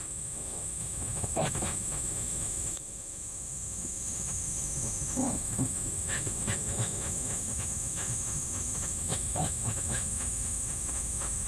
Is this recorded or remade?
remade